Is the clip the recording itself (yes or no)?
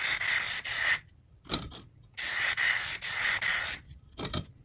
yes